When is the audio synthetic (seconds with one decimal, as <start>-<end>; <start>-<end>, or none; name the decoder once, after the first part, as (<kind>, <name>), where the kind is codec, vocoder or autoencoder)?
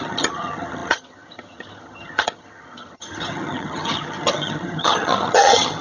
0.0-5.8 (vocoder, HiFi-GAN)